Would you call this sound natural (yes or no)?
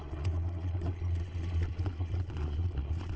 no